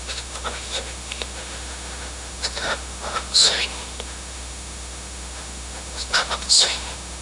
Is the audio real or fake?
fake